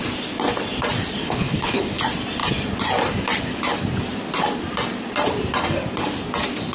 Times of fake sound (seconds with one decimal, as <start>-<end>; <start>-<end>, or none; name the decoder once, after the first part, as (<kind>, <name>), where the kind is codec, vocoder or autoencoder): 1.2-2.0 (codec, HILCodec)